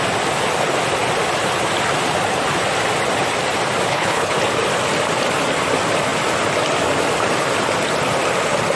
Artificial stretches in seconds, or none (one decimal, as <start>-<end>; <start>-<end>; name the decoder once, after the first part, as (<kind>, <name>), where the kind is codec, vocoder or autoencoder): 3.9-4.4 (codec, HILCodec)